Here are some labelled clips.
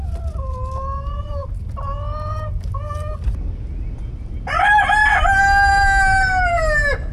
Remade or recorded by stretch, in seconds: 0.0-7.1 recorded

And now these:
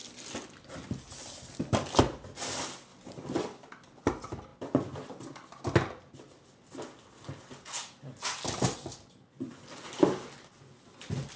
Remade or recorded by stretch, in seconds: 0.0-11.4 recorded

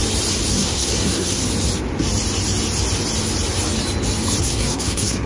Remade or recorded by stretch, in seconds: 0.0-0.5 recorded; 0.5-1.4 remade; 1.4-4.4 recorded; 4.4-5.3 remade